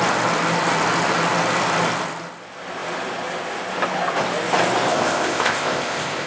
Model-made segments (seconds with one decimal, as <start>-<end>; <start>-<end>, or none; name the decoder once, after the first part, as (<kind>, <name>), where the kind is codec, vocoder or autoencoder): 4.9-6.3 (codec, ZipCodec)